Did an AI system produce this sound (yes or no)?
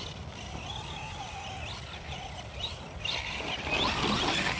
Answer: no